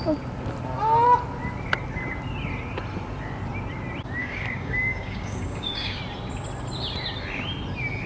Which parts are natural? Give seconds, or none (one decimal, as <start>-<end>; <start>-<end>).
0.0-4.2; 6.0-8.1